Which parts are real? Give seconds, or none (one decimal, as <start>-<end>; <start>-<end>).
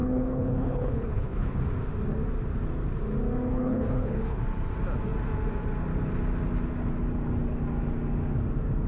1.6-3.5; 4.4-8.9